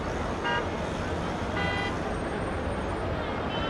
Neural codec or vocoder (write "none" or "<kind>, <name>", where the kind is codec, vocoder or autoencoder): none